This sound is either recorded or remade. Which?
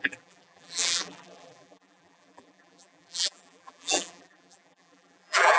remade